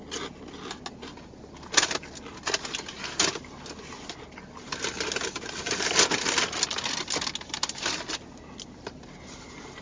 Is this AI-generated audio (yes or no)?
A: no